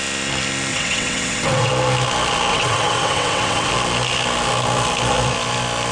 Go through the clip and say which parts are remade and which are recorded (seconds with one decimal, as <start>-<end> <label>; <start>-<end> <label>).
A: 0.0-0.7 recorded; 0.7-1.7 remade; 1.7-2.5 recorded; 2.5-3.7 remade; 3.7-5.9 recorded